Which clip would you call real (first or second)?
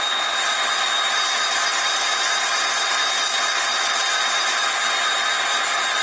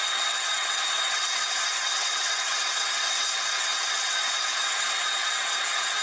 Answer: first